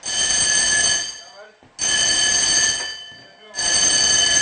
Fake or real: real